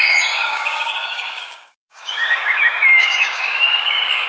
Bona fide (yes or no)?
no